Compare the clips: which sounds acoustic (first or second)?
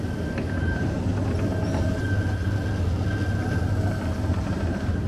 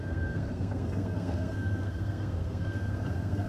first